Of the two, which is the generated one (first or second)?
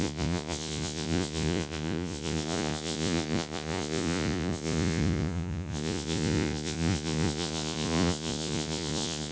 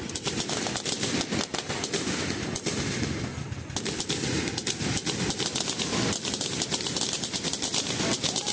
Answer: first